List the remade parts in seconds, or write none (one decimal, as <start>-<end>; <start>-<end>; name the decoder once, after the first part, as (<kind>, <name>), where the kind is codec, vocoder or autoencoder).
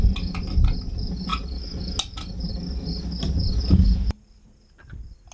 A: none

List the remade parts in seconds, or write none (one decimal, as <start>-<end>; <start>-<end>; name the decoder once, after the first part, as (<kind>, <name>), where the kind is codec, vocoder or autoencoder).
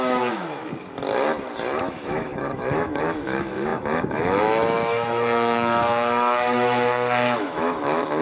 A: 0.0-0.6 (autoencoder, DAC-VAE); 1.8-8.2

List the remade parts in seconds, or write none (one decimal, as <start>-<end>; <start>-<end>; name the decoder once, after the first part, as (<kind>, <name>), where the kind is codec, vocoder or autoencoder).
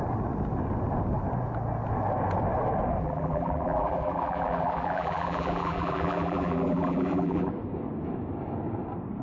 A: 3.0-7.5 (vocoder, BigVGAN v2)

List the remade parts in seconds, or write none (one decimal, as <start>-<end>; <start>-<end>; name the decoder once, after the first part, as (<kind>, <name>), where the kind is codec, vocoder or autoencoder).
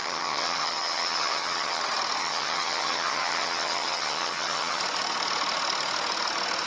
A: 0.0-1.8 (vocoder, HiFi-GAN); 2.2-4.8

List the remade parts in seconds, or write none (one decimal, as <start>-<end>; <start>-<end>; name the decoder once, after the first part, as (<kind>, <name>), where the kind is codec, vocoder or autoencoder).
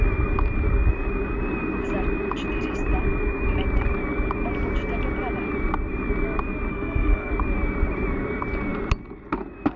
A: 6.7-7.3 (codec, SNAC)